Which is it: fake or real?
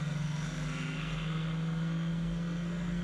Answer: fake